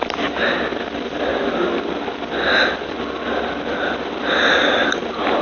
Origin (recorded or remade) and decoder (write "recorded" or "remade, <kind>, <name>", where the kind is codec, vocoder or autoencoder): recorded